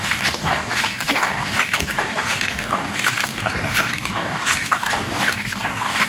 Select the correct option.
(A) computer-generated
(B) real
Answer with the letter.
A